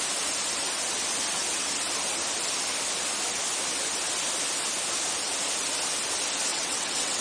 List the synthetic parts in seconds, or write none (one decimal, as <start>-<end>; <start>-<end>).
6.5-7.2